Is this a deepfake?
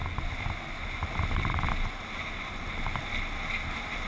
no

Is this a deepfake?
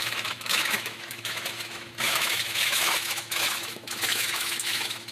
yes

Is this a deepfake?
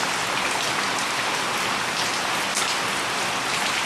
no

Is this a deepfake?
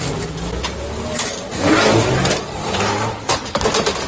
no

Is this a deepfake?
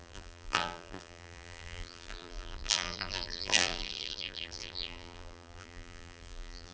yes